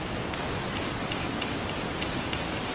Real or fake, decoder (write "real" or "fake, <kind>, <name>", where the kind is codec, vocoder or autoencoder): real